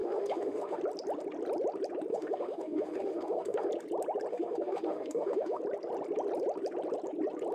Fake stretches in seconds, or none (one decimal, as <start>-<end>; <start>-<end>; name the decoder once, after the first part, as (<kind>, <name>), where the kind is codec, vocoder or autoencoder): 0.0-0.8 (autoencoder, DAC-VAE); 2.1-3.7; 4.3-5.6